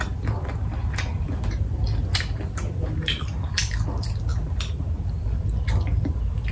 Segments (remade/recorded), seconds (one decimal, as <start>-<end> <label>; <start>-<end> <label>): 0.0-6.5 recorded